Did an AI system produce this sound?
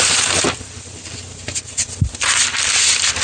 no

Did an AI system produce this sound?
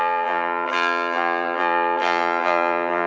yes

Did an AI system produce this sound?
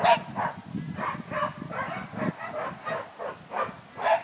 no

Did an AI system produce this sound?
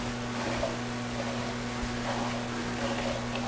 no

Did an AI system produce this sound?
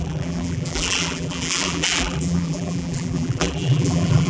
yes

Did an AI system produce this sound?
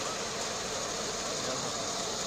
yes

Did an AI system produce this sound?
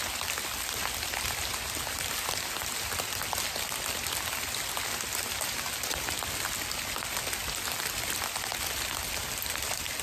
no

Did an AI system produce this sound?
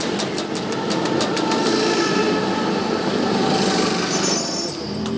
yes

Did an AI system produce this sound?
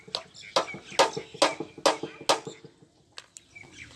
no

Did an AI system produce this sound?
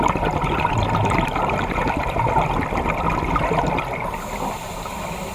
no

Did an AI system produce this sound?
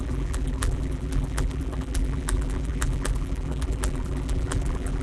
yes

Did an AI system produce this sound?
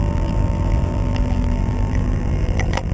yes